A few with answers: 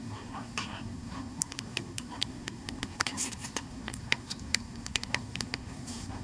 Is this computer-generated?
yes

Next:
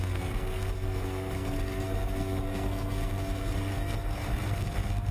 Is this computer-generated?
yes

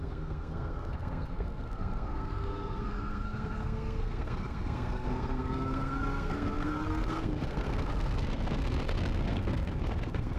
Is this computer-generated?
yes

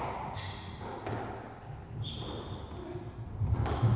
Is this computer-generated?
no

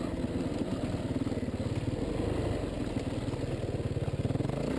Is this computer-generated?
no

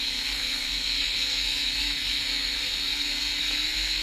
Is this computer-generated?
yes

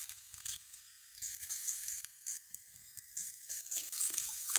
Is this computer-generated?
yes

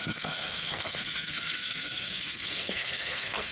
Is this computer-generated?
yes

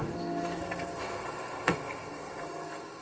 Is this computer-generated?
yes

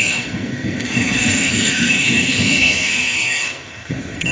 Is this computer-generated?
yes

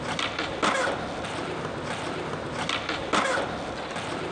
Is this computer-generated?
no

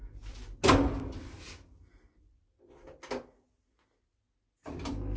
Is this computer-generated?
no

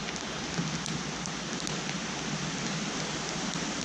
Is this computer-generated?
no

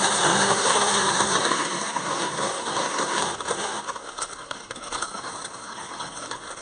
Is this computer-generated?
yes